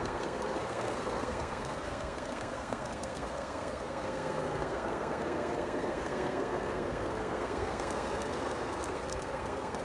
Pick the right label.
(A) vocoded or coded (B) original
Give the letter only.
A